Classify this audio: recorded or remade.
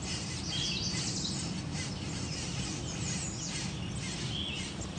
recorded